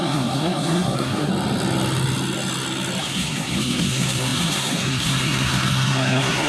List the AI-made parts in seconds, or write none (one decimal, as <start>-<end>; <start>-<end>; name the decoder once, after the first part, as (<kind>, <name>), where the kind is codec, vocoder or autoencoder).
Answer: 0.0-1.3 (codec, SNAC); 3.0-6.5